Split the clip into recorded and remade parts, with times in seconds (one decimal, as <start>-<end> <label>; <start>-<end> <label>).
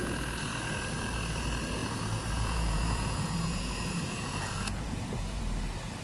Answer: 0.0-1.8 recorded; 1.8-5.4 remade; 5.4-6.0 recorded